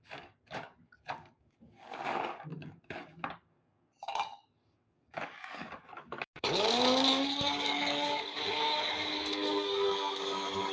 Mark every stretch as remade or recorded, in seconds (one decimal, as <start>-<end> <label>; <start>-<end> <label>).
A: 0.0-10.7 remade